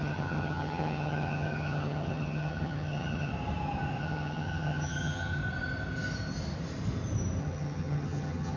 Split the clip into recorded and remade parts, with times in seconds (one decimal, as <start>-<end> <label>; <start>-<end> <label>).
0.0-3.3 remade; 3.3-4.0 recorded; 4.0-5.4 remade; 5.4-7.4 recorded; 7.4-8.6 remade